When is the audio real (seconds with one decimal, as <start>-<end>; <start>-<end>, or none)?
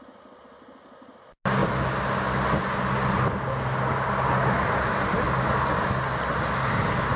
0.0-7.2